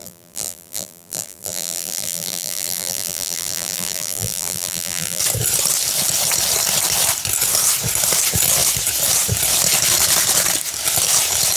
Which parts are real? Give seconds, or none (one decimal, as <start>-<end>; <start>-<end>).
5.2-11.6